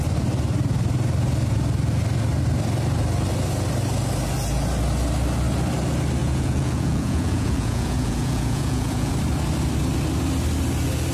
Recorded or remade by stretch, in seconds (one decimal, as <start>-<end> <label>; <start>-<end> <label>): 0.0-6.2 recorded; 6.2-9.1 remade; 9.1-11.1 recorded